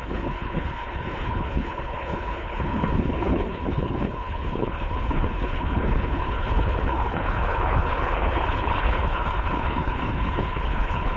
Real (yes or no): no